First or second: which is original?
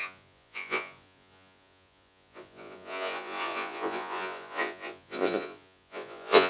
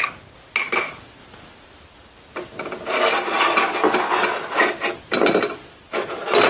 second